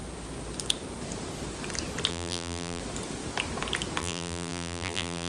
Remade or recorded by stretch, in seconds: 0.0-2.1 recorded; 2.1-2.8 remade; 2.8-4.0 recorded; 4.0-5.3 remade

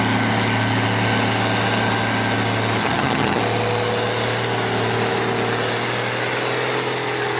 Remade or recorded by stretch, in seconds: 0.0-2.8 recorded; 2.8-3.4 remade; 3.4-7.4 recorded

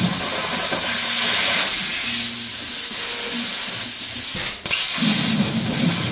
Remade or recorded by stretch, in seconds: 0.0-6.1 recorded

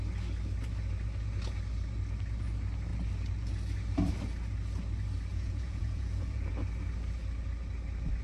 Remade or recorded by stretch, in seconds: 0.0-5.3 recorded; 5.3-6.5 remade; 6.5-8.2 recorded

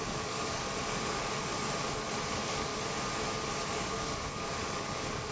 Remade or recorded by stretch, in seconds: 0.0-1.5 remade; 1.5-2.3 recorded; 2.3-2.7 remade; 2.7-3.7 recorded; 3.7-5.3 remade

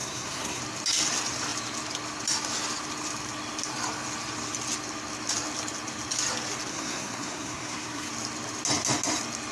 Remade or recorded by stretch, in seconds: 0.0-0.6 remade; 0.6-6.7 recorded; 6.7-8.1 remade; 8.1-9.5 recorded

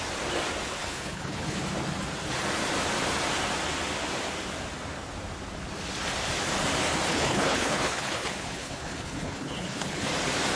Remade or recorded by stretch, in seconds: 0.0-0.6 recorded; 0.6-1.6 remade; 1.6-7.1 recorded; 7.1-10.1 remade; 10.1-10.6 recorded

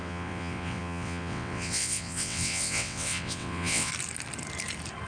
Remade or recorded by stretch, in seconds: 0.0-3.9 remade; 3.9-5.1 recorded